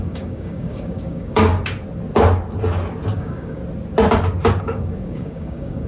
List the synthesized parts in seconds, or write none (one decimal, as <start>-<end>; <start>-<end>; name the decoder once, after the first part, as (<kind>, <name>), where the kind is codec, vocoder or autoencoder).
0.0-1.5 (codec, DAC); 3.1-3.6; 4.6-5.9